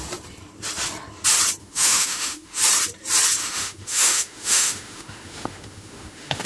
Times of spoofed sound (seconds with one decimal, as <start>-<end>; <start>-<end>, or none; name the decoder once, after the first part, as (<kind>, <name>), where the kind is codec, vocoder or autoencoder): 1.6-2.6 (autoencoder, DAC-VAE); 3.4-6.5